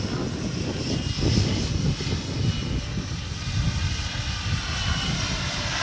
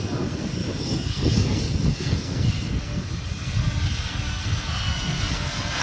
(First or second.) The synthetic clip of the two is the second